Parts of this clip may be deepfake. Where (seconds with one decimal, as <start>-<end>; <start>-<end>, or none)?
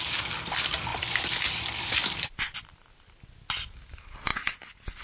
none